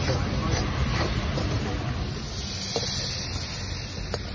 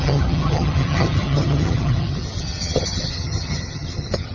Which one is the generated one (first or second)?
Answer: second